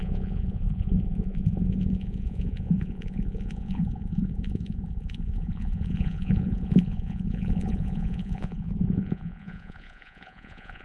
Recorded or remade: remade